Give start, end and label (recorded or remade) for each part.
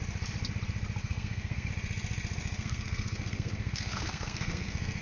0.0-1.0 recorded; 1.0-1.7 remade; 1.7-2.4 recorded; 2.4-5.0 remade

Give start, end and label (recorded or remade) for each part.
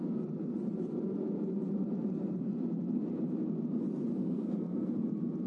0.0-4.2 recorded; 4.2-5.0 remade; 5.0-5.5 recorded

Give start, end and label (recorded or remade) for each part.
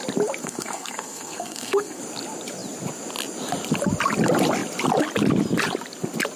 0.0-0.4 recorded; 0.4-2.0 remade; 2.0-6.4 recorded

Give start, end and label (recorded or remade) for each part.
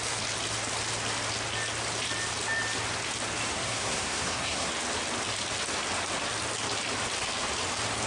0.0-3.5 recorded; 3.5-4.7 remade; 4.7-8.1 recorded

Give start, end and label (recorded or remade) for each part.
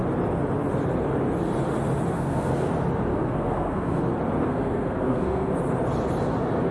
0.0-2.1 recorded; 2.1-2.7 remade; 2.7-3.1 recorded; 3.1-4.0 remade; 4.0-4.4 recorded; 4.4-5.5 remade; 5.5-6.7 recorded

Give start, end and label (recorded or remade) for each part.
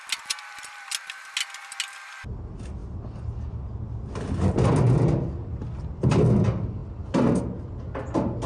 0.0-8.5 recorded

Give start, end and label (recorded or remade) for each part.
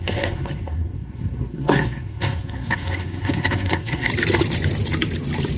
0.0-4.1 remade; 4.1-5.6 recorded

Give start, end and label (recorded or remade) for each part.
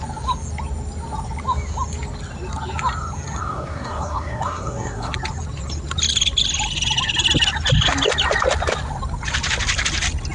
0.0-3.4 recorded; 3.4-5.1 remade; 5.1-10.3 recorded